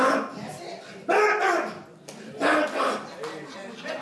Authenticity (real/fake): real